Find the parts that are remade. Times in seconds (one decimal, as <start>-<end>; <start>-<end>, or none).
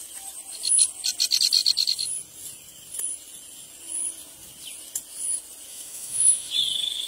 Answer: 5.7-6.5